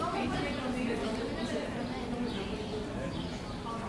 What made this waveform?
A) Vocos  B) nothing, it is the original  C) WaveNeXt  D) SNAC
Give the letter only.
B